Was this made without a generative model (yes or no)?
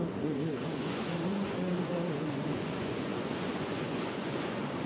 no